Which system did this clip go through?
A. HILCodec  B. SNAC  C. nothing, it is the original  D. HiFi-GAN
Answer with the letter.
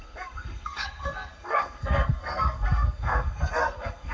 B